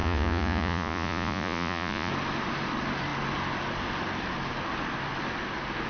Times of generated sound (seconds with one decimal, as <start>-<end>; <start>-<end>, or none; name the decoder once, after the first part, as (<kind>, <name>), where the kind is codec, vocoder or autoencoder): 0.0-2.1 (vocoder, Vocos)

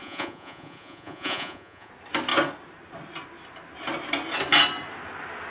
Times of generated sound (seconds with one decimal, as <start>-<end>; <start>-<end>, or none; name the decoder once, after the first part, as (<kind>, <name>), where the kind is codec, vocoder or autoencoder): 0.0-1.9 (vocoder, Vocos)

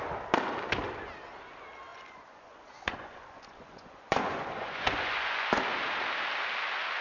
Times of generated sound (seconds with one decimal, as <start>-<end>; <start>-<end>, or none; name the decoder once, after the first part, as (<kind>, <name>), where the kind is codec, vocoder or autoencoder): 1.9-5.6 (vocoder, Vocos)

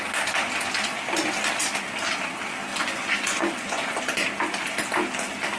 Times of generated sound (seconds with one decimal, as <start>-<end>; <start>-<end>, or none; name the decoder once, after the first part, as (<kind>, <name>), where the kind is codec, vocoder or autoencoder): 2.7-4.0 (vocoder, Vocos)

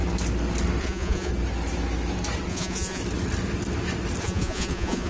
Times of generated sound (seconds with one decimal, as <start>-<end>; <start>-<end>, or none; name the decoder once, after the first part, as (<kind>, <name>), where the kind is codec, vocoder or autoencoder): 0.8-1.3 (vocoder, Vocos); 2.5-3.0; 4.2-5.1

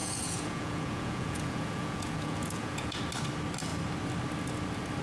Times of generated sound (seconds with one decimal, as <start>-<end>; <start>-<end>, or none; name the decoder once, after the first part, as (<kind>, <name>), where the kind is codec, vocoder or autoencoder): 0.0-3.0 (vocoder, Vocos)

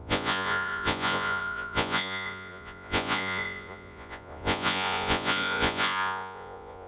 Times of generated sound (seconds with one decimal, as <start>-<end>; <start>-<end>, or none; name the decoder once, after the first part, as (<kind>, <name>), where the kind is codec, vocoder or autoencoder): 0.0-6.9 (vocoder, Vocos)